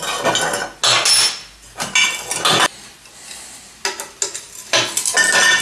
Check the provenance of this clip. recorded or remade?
recorded